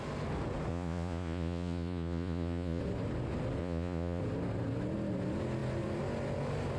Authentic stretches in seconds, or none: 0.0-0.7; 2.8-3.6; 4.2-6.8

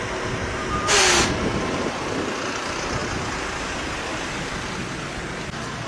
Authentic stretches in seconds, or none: 0.0-5.9

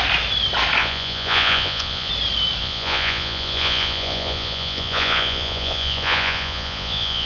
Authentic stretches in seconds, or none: 0.0-0.8; 2.1-2.6

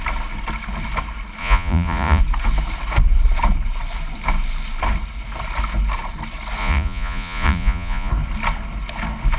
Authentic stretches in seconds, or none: 0.0-1.4; 2.2-6.6; 8.1-9.4

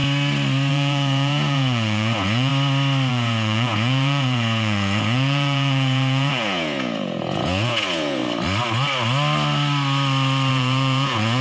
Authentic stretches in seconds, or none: 0.0-0.7; 2.5-3.1; 8.2-10.5